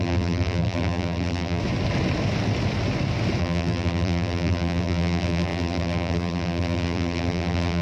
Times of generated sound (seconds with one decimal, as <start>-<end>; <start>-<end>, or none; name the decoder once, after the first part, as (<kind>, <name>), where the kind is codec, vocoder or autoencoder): 0.0-1.6 (vocoder, BigVGAN v2); 3.4-7.8